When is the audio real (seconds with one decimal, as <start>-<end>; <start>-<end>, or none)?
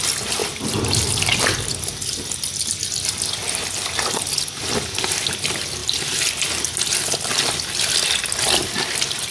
0.0-9.3